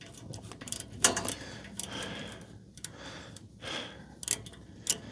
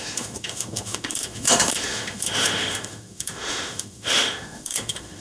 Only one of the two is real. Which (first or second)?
first